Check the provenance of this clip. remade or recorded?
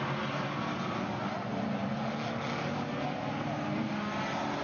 recorded